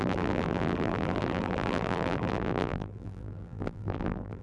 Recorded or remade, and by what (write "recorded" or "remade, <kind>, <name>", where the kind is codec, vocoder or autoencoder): remade, vocoder, BigVGAN v2